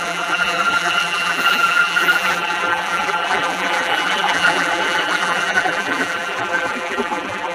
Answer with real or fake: fake